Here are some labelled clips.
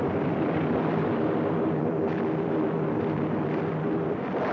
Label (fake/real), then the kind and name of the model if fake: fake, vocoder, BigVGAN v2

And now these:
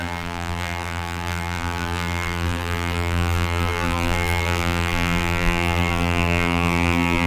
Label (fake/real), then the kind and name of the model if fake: fake, vocoder, BigVGAN v2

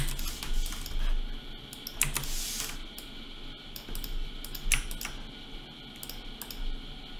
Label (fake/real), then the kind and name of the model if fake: real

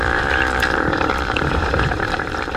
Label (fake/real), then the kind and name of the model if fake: fake, vocoder, BigVGAN v2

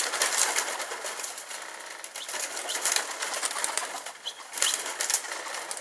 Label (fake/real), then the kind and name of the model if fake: real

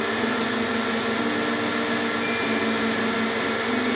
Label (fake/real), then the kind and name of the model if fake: real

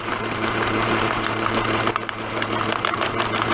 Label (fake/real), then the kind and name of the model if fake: fake, vocoder, BigVGAN v2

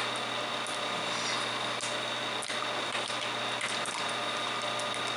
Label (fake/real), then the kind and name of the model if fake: real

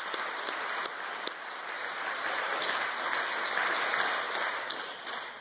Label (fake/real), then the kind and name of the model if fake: real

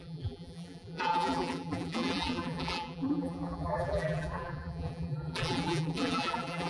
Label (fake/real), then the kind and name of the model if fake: fake, vocoder, BigVGAN v2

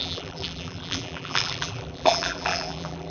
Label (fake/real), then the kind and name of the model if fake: fake, vocoder, BigVGAN v2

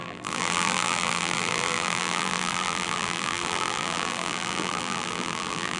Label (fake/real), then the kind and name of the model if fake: fake, vocoder, BigVGAN v2